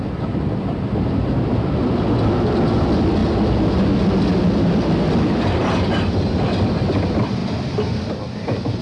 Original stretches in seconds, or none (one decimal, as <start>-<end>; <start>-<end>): 0.0-8.8

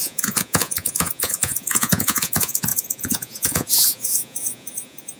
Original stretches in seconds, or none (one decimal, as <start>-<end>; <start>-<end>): none

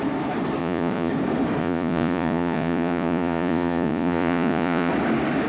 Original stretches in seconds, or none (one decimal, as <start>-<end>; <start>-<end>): 0.0-0.6; 1.1-1.6; 4.9-5.5

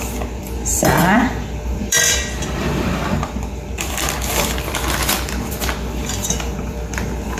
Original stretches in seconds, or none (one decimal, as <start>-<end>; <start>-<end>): none